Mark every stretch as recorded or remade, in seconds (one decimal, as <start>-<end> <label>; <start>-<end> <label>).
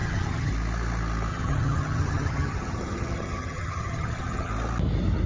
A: 0.0-0.5 remade; 0.5-1.3 recorded; 1.3-4.5 remade; 4.5-5.3 recorded